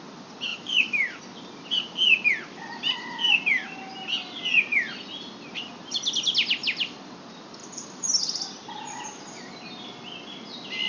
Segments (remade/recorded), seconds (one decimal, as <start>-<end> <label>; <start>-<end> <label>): 0.0-0.5 recorded; 0.5-1.2 remade; 1.2-7.6 recorded; 7.6-8.2 remade; 8.2-10.9 recorded